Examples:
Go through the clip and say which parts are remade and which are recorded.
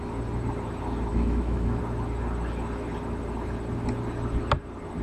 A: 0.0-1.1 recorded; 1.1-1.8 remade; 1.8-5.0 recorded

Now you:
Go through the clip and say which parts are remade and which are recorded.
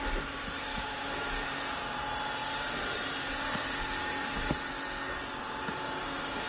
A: 0.0-0.7 recorded; 0.7-1.3 remade; 1.3-6.5 recorded